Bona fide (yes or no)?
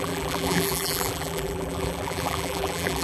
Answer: no